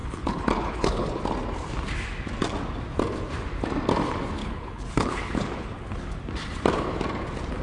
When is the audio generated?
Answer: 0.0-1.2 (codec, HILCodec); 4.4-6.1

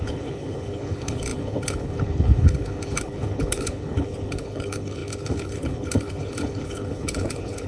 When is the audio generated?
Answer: 0.0-7.7 (codec, HILCodec)

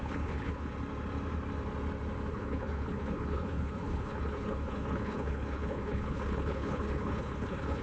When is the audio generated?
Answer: 0.0-0.7 (codec, HILCodec); 2.3-7.8

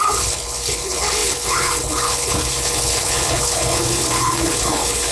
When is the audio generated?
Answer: 0.0-5.1 (codec, HILCodec)

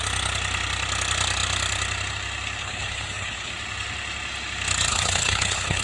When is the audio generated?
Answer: 2.6-3.5 (codec, HILCodec); 4.9-5.8

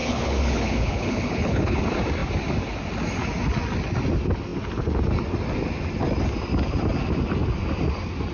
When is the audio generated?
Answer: 0.0-1.8 (codec, HILCodec)